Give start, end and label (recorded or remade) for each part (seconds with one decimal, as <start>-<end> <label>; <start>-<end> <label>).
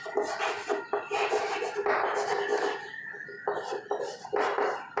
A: 0.0-5.0 recorded